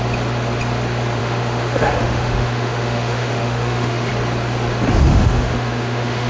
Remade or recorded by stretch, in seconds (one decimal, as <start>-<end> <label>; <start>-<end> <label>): 0.0-1.2 recorded; 1.2-4.1 remade; 4.1-5.1 recorded; 5.1-6.3 remade